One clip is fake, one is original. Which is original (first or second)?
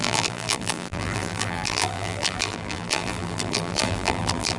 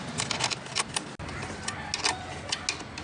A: second